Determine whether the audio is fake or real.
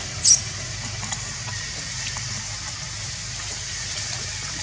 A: real